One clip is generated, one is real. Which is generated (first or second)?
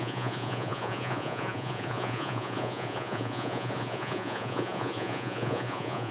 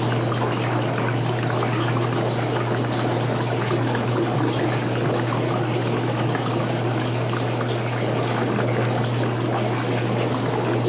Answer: first